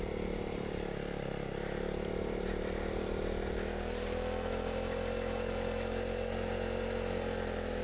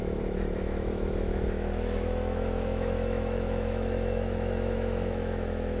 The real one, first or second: first